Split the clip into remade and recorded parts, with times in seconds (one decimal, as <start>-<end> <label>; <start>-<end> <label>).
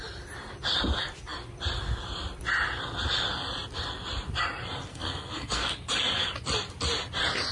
0.0-4.9 recorded; 4.9-5.7 remade; 5.7-7.5 recorded